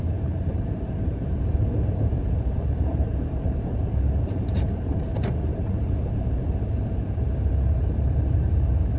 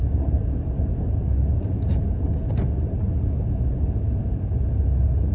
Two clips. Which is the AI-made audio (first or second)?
first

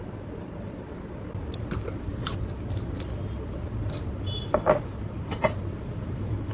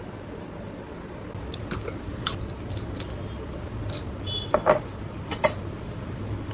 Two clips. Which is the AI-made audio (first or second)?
first